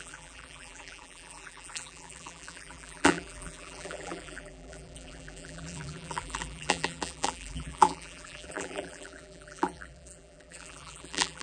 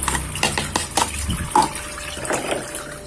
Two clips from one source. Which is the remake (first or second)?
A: first